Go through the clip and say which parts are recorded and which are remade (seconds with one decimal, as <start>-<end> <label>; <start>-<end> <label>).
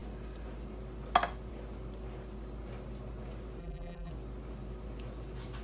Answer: 0.0-3.6 recorded; 3.6-4.1 remade; 4.1-5.6 recorded